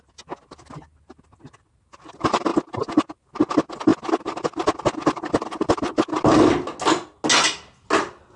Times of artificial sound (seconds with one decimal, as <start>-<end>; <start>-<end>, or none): none